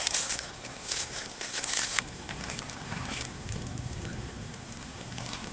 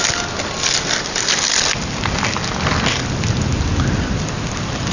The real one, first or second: second